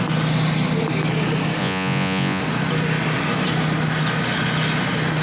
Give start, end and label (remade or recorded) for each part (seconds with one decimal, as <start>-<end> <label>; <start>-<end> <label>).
0.0-1.6 recorded; 1.6-2.4 remade; 2.4-5.2 recorded